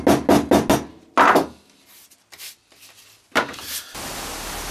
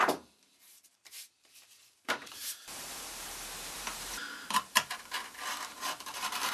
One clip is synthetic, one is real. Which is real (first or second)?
first